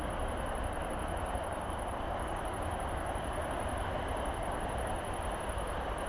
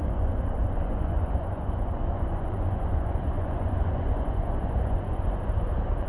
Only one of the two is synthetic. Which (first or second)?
second